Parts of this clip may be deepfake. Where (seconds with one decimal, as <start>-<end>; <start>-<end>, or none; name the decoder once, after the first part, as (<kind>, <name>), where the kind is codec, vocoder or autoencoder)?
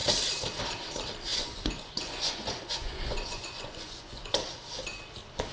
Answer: 1.3-4.6 (vocoder, Vocos)